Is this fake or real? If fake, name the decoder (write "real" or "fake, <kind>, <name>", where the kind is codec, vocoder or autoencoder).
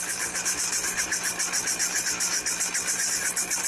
real